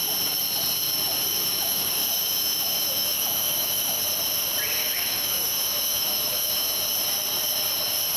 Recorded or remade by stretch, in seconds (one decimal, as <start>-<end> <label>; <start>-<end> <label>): 0.0-1.3 recorded; 1.3-4.0 remade; 4.0-4.8 recorded; 4.8-6.8 remade; 6.8-8.2 recorded